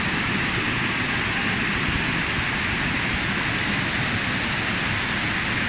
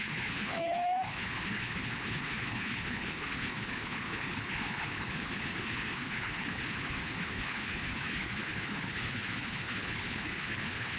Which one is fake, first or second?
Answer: second